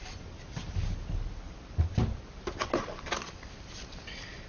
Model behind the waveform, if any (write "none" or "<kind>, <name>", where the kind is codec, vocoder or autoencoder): none